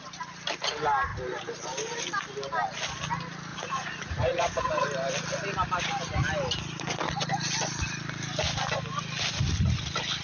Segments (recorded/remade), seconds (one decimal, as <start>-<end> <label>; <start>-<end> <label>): 0.0-3.5 recorded; 3.5-4.7 remade; 4.7-10.2 recorded